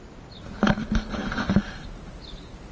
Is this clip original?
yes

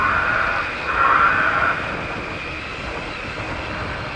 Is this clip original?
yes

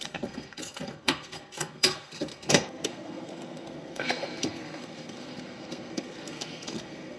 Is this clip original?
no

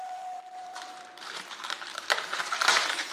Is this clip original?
no